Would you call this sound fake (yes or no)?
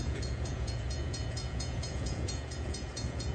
yes